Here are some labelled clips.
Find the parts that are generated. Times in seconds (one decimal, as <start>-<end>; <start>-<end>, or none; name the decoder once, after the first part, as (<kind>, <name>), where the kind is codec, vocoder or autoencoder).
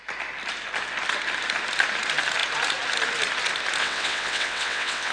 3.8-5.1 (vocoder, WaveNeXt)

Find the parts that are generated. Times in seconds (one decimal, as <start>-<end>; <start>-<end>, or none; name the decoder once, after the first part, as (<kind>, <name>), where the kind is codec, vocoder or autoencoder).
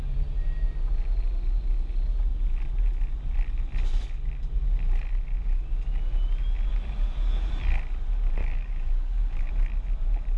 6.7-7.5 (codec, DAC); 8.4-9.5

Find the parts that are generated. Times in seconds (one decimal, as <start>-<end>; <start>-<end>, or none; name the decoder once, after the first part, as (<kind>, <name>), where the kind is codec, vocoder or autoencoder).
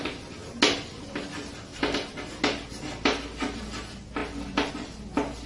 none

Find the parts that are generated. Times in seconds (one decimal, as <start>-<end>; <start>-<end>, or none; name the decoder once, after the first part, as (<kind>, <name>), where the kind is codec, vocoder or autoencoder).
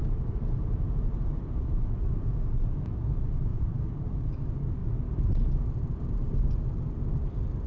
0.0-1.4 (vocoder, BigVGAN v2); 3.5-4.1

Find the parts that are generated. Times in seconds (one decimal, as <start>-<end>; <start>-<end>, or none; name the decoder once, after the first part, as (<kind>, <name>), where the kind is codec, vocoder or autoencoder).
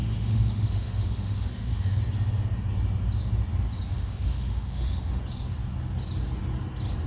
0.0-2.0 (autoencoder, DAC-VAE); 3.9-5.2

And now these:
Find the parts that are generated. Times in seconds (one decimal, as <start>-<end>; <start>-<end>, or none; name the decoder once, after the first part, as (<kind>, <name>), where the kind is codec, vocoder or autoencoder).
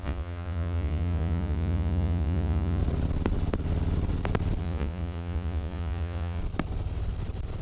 0.0-2.8 (vocoder, Vocos); 4.6-6.4